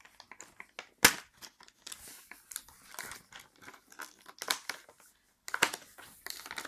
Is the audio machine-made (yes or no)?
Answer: no